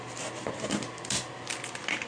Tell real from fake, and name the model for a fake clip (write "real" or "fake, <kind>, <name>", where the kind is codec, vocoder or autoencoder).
real